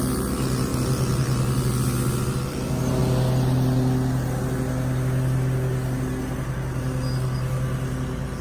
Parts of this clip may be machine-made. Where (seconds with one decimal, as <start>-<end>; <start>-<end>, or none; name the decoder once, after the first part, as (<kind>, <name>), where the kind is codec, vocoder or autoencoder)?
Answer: none